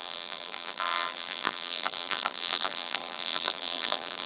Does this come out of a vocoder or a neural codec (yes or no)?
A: yes